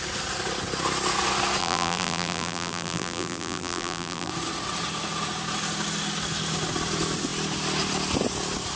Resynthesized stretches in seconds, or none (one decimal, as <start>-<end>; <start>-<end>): 1.6-4.3